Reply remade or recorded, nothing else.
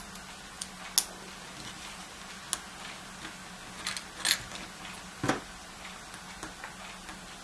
recorded